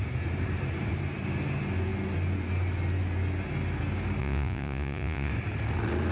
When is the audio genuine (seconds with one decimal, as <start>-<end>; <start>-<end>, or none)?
0.0-4.2; 5.3-6.1

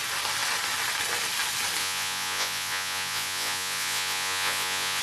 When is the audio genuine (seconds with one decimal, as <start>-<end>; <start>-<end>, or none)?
0.0-1.8

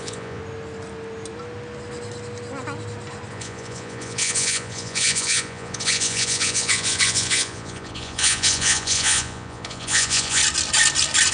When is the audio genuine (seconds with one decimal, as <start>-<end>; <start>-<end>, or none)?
0.4-3.3; 10.4-11.3

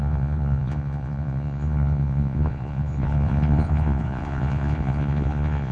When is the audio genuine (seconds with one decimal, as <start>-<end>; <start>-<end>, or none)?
none

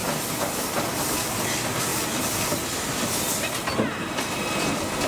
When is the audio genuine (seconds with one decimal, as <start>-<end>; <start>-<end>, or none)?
0.0-5.1

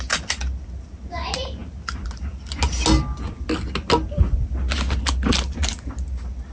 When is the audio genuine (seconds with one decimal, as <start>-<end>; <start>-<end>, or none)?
0.0-6.5